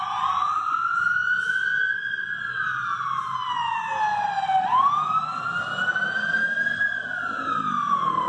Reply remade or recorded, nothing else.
recorded